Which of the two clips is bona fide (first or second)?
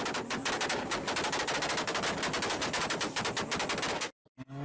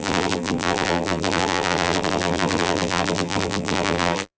first